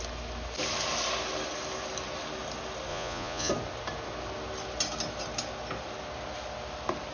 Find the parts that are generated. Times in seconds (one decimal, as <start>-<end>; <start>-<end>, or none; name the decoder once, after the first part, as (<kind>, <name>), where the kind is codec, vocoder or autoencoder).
2.9-3.5 (vocoder, Vocos)